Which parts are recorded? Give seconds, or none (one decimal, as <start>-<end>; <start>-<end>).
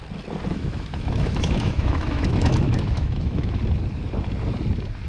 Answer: 0.0-0.5; 3.6-5.1